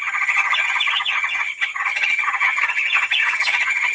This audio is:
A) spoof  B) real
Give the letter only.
A